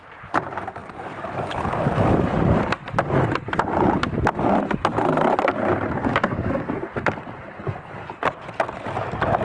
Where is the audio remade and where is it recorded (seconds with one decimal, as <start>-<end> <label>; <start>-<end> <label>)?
0.0-6.0 recorded; 6.0-6.8 remade; 6.8-9.4 recorded